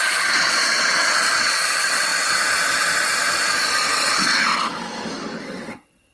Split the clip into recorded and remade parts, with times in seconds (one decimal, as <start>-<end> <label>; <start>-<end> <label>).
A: 0.0-2.1 remade; 2.1-3.8 recorded; 3.8-4.5 remade; 4.5-5.4 recorded; 5.4-6.1 remade